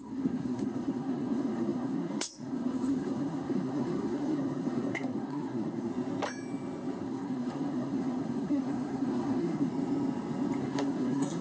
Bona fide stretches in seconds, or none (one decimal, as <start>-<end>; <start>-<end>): 5.9-7.0; 9.7-10.6